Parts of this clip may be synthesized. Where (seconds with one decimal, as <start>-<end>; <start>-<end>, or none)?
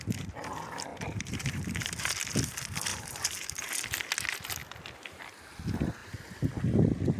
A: 0.9-1.9; 2.9-3.7